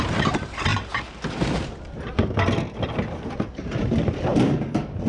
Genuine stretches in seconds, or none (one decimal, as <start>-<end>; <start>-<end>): 0.7-3.2